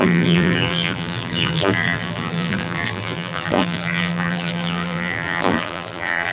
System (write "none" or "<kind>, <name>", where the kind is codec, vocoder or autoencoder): vocoder, BigVGAN v2